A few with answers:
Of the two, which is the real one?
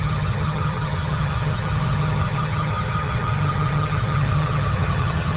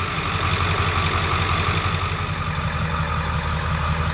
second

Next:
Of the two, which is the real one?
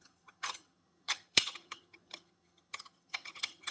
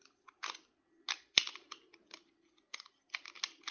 second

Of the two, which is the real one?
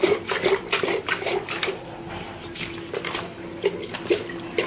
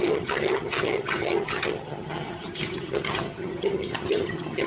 first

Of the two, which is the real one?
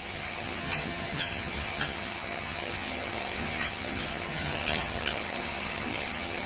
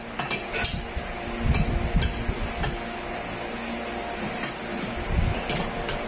second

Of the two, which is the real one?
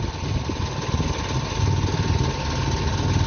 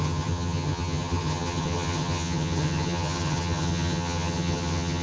first